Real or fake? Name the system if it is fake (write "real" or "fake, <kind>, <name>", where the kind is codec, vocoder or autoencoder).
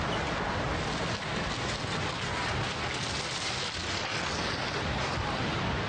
real